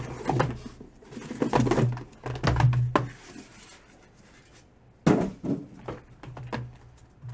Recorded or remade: recorded